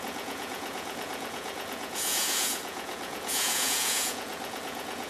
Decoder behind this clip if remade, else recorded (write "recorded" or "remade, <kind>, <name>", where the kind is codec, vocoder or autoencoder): remade, vocoder, Vocos